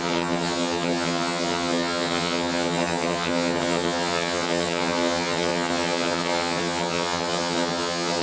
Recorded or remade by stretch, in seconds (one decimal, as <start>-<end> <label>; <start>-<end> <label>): 0.0-8.2 remade